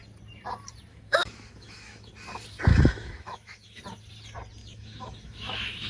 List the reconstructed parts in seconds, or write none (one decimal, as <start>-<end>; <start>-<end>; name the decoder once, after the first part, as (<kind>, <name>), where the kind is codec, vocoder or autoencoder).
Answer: 0.9-2.1 (autoencoder, DAC-VAE); 2.7-3.8; 4.6-5.9